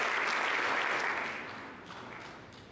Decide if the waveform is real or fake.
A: real